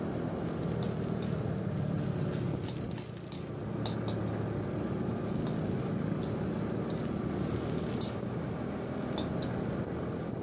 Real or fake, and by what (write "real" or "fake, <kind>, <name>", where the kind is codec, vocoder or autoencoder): real